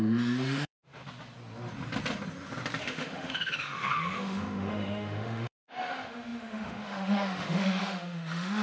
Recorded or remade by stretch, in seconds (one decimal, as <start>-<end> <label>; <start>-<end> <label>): 0.0-1.0 remade; 1.0-2.8 recorded; 2.8-8.6 remade